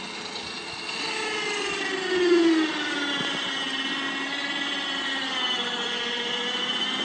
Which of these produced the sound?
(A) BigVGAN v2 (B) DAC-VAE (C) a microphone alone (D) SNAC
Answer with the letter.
C